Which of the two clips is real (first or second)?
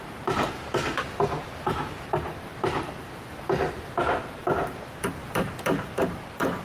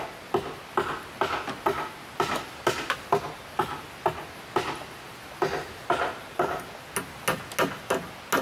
second